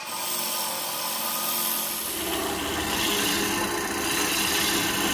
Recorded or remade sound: recorded